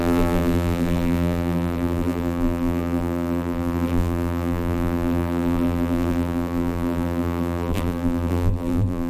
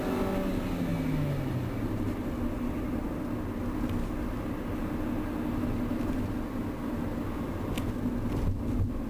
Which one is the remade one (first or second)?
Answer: first